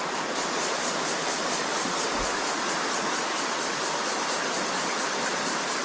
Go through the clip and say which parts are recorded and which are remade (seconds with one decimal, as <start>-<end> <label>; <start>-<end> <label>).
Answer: 0.0-1.7 recorded; 1.7-3.1 remade; 3.1-5.8 recorded